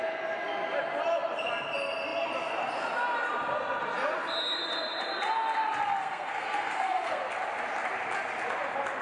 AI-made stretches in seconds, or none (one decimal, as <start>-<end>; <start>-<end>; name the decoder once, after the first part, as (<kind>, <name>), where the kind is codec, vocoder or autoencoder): 6.0-7.2 (codec, SNAC)

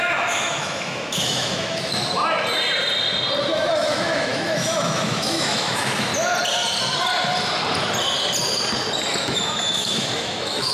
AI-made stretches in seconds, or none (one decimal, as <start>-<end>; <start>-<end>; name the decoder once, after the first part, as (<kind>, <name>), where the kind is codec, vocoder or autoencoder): 0.0-2.2 (autoencoder, DAC-VAE); 3.4-6.1; 9.2-10.7

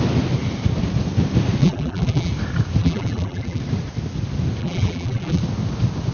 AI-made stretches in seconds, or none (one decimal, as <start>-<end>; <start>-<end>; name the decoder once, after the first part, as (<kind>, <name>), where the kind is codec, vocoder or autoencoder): 1.6-2.3 (vocoder, BigVGAN v2); 2.8-3.6; 4.6-5.4

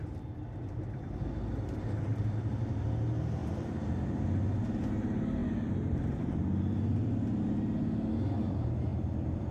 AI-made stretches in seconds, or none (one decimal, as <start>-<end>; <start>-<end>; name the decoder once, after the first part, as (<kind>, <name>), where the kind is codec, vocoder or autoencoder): 3.4-4.0 (vocoder, BigVGAN v2); 5.4-6.1; 8.9-9.5